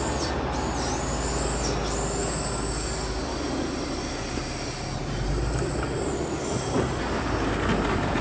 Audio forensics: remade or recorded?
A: recorded